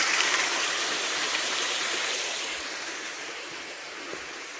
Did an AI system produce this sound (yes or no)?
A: yes